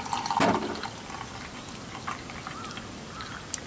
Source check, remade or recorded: recorded